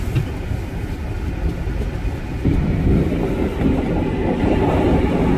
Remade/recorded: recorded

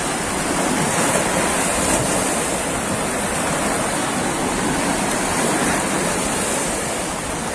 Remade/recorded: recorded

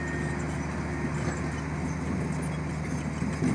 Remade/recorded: recorded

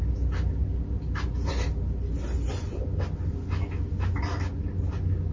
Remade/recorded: recorded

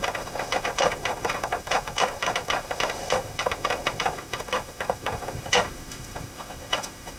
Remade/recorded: remade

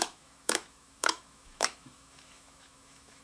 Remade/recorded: remade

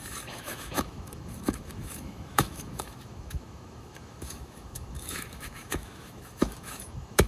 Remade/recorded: remade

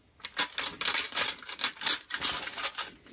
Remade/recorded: recorded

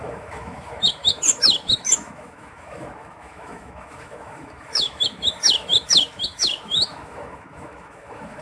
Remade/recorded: remade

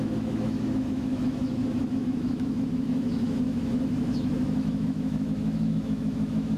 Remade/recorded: remade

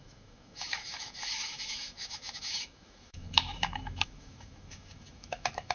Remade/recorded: remade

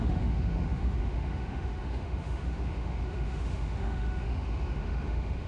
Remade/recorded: remade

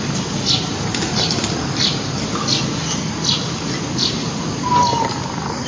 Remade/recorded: recorded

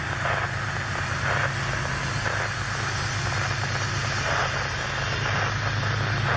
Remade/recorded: recorded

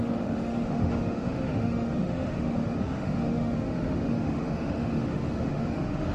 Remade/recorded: remade